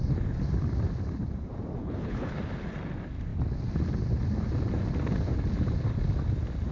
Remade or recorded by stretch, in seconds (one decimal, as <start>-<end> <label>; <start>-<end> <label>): 0.0-1.8 recorded; 1.8-2.4 remade; 2.4-6.7 recorded